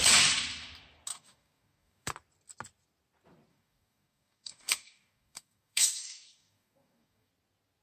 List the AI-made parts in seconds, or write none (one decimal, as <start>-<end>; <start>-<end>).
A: 1.1-2.1; 3.5-7.3